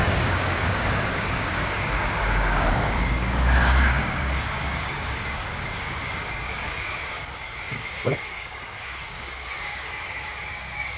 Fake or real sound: fake